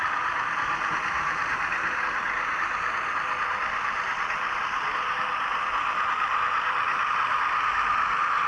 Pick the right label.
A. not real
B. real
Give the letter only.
B